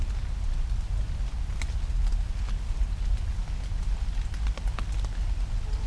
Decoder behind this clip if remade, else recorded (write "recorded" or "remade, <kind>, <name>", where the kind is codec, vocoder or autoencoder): recorded